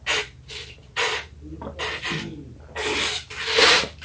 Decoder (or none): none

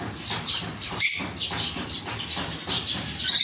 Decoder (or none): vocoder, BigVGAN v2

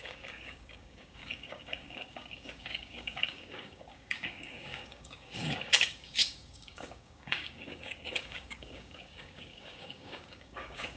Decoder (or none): codec, DAC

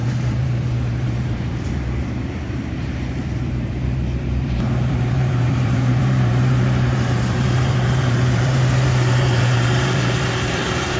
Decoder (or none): vocoder, BigVGAN v2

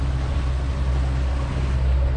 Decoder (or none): none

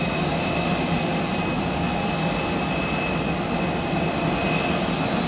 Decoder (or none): none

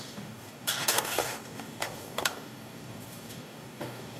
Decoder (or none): codec, DAC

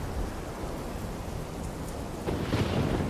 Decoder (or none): vocoder, BigVGAN v2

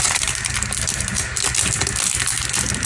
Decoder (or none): none